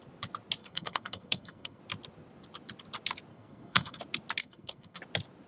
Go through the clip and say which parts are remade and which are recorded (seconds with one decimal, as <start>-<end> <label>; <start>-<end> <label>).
0.0-0.6 recorded; 0.6-1.8 remade; 1.8-3.3 recorded; 3.3-4.0 remade; 4.0-4.4 recorded; 4.4-5.0 remade; 5.0-5.5 recorded